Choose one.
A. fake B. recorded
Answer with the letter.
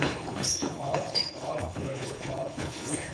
A